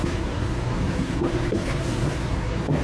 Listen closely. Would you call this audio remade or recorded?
remade